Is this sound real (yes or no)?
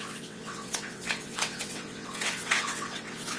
no